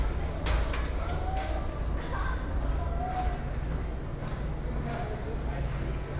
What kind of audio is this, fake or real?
real